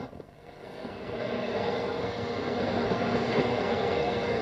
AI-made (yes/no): yes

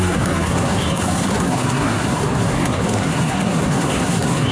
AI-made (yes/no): yes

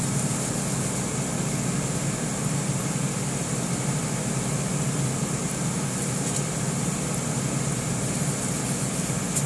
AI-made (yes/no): no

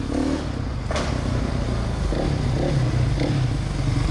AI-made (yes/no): no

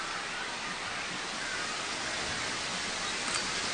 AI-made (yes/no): no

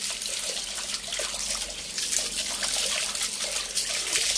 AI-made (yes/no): no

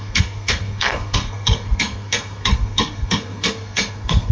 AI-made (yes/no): yes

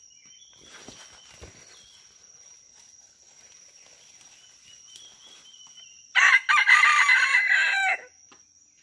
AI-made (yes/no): no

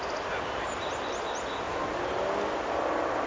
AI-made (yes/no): no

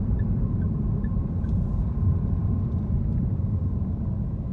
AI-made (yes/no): yes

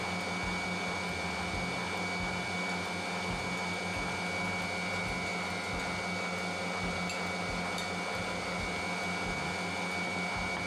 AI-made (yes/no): no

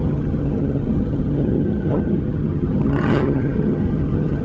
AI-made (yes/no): yes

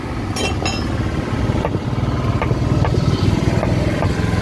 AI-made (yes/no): no